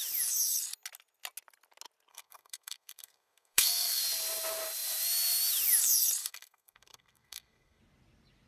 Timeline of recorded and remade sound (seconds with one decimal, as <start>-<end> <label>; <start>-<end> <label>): 0.0-2.1 recorded; 2.1-4.0 remade; 4.0-6.2 recorded; 6.2-7.8 remade; 7.8-8.5 recorded